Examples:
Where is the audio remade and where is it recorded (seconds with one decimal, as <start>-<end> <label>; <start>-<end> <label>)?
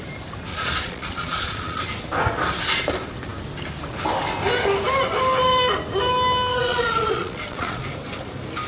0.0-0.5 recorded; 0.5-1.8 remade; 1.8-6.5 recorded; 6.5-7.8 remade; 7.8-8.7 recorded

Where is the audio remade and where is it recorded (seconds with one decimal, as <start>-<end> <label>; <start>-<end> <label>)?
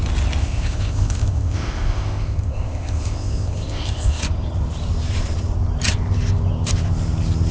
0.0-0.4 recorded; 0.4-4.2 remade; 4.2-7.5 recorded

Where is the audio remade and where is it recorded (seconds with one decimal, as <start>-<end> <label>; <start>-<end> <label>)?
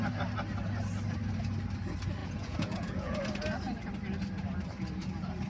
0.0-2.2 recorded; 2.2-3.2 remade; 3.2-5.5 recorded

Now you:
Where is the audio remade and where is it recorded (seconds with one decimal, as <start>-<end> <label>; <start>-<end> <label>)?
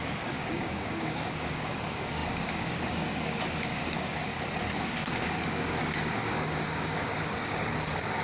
0.0-4.2 remade; 4.2-4.8 recorded; 4.8-8.2 remade